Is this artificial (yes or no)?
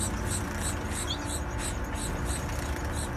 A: no